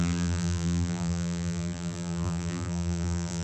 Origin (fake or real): fake